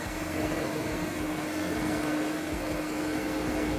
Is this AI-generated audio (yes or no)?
yes